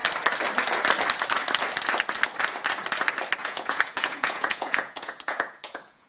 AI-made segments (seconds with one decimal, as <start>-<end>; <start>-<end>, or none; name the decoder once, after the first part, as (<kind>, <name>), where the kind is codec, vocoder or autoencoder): 3.4-6.1 (vocoder, Vocos)